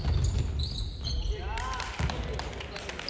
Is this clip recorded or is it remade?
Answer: recorded